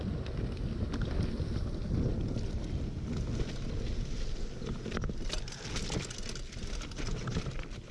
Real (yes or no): yes